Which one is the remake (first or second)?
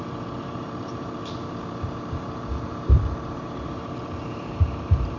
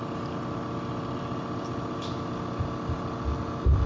first